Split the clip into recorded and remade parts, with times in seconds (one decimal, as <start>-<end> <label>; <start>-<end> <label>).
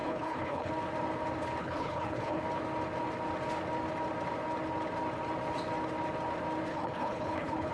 0.0-0.7 remade; 0.7-1.6 recorded; 1.6-2.4 remade; 2.4-6.7 recorded; 6.7-7.7 remade